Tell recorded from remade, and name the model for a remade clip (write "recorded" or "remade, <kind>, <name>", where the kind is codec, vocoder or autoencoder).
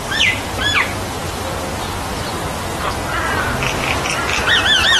recorded